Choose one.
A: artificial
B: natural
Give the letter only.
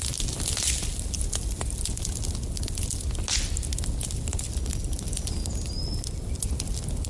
B